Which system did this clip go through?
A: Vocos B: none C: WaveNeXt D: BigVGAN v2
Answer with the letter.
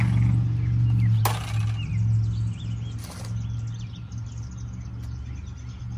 B